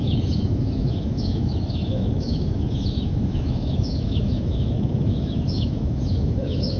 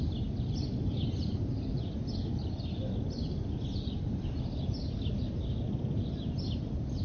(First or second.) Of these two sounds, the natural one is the second